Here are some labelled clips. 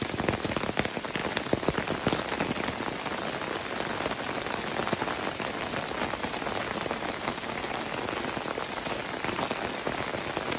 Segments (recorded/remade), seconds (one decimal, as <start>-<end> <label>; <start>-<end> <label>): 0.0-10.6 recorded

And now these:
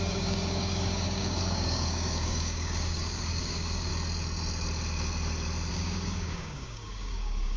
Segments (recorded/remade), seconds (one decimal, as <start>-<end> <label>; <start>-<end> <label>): 0.0-3.9 remade; 3.9-5.7 recorded; 5.7-7.6 remade

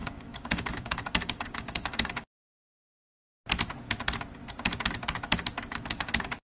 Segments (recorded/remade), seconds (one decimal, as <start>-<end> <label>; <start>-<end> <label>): 0.0-3.3 remade; 3.3-5.9 recorded; 5.9-6.4 remade

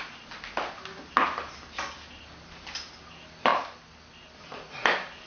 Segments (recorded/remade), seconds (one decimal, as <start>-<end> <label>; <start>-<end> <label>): 0.0-5.3 recorded